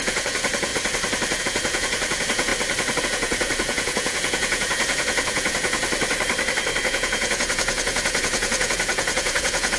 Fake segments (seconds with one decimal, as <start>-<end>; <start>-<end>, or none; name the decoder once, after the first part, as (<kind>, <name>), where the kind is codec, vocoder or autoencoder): 0.0-0.7 (vocoder, Vocos); 1.4-2.5; 3.0-5.8; 6.8-9.8